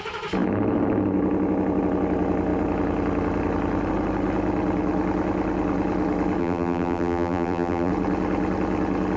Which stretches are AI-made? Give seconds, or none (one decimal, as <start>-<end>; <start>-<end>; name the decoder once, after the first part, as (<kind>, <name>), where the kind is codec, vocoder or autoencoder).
6.4-7.9 (vocoder, BigVGAN v2)

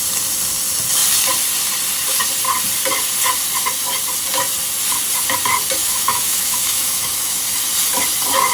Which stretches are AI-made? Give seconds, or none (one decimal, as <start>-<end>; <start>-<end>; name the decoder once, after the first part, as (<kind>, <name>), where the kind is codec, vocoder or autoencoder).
5.8-7.4 (autoencoder, DAC-VAE)

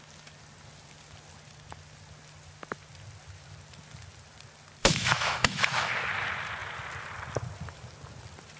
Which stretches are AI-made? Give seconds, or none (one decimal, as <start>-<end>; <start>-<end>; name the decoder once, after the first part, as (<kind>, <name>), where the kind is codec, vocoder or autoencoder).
4.8-5.9 (autoencoder, DAC-VAE)

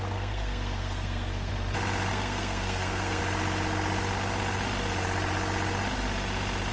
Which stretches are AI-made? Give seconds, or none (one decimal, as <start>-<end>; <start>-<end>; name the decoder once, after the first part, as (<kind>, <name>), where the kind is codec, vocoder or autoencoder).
0.0-1.5 (codec, SNAC); 2.1-3.2

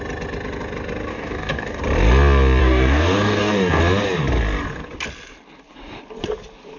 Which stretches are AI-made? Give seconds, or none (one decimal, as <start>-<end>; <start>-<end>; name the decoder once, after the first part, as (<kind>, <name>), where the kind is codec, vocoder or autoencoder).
1.1-1.8 (codec, DAC); 2.6-3.8